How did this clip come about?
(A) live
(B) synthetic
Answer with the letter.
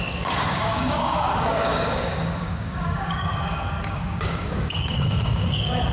B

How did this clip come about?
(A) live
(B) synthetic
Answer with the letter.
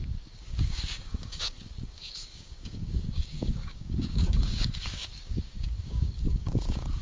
B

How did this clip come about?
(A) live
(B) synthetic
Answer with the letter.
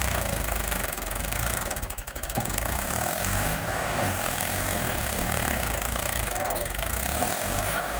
B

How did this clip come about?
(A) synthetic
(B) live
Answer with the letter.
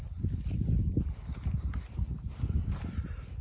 B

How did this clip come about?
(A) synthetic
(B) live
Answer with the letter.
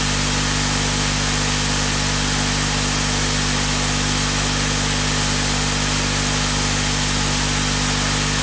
B